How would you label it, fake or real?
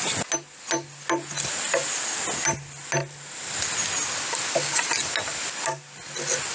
real